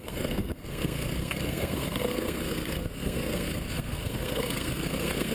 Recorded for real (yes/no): no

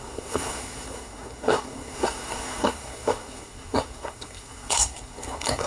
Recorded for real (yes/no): no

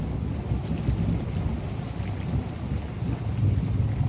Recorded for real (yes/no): yes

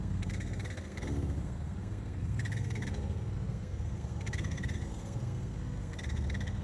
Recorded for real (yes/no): no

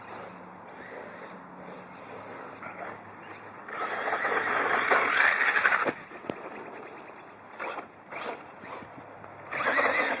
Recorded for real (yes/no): yes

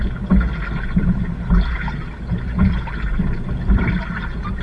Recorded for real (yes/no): yes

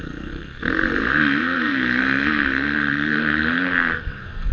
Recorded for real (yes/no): no